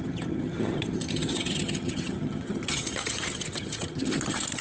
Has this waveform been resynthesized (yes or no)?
yes